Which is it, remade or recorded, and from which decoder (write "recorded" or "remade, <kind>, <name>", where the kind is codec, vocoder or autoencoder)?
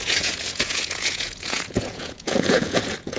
remade, vocoder, Vocos